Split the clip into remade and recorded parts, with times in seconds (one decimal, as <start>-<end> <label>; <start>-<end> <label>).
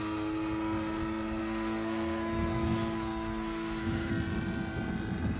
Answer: 0.0-1.4 recorded; 1.4-4.1 remade; 4.1-5.4 recorded